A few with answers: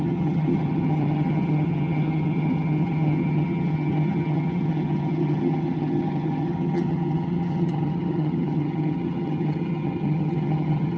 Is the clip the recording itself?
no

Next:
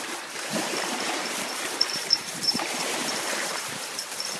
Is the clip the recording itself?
no